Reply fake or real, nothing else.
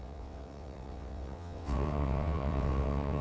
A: fake